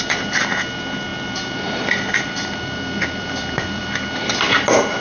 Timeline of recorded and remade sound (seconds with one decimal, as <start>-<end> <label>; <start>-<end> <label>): 0.0-1.1 recorded; 1.1-3.8 remade; 3.8-5.0 recorded